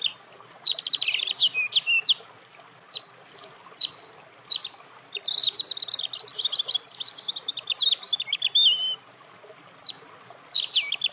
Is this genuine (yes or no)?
yes